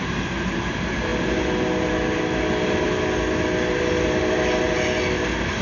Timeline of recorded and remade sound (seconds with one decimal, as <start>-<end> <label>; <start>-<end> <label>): 0.0-5.6 recorded